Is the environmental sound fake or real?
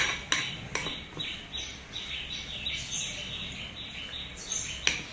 real